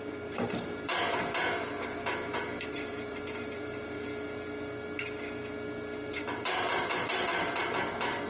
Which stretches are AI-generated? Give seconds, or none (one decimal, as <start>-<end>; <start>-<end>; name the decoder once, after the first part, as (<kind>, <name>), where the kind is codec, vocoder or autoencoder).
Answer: 0.0-4.1 (vocoder, BigVGAN v2); 6.1-8.3

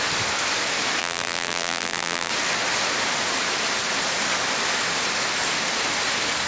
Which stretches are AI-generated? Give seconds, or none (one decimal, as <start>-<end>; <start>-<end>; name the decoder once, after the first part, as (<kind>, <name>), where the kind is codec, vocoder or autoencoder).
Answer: 1.0-2.3 (vocoder, BigVGAN v2)

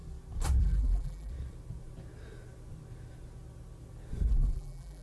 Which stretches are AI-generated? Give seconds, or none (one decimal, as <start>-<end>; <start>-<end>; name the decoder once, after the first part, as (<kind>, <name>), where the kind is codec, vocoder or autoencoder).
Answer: 0.6-1.3 (vocoder, BigVGAN v2); 4.3-5.0

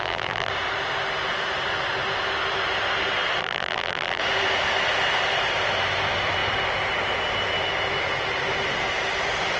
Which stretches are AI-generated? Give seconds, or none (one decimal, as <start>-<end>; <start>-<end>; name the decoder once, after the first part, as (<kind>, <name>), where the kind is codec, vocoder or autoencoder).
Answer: 0.0-0.5 (vocoder, BigVGAN v2); 3.4-4.2